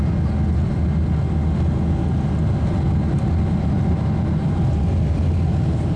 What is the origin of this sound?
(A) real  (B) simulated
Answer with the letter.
A